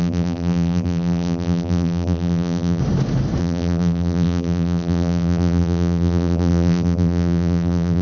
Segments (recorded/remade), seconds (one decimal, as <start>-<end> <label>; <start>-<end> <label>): 0.0-2.8 remade; 2.8-3.4 recorded; 3.4-8.0 remade